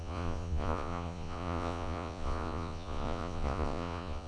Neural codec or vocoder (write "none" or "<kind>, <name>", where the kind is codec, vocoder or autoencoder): vocoder, Vocos